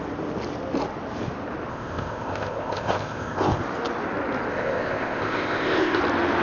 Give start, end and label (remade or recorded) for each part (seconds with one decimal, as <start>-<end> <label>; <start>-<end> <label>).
0.0-1.7 recorded; 1.7-3.6 remade; 3.6-4.5 recorded; 4.5-6.0 remade; 6.0-6.4 recorded